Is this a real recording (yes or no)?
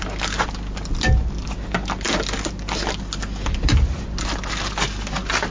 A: yes